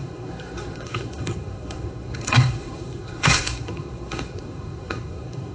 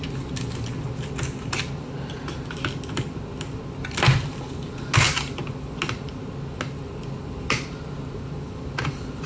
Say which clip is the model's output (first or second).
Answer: first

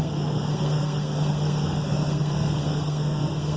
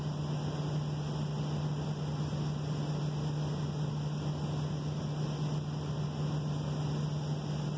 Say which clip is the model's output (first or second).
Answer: first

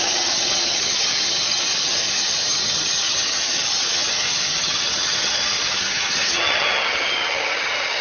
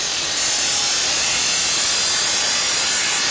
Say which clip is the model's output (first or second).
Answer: first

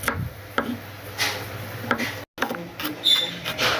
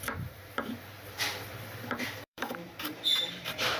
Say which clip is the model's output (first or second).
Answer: second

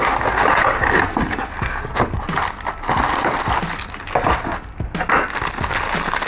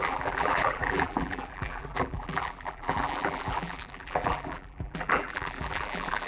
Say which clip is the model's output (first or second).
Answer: second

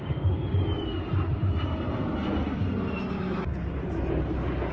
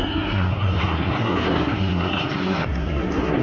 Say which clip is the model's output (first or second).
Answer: second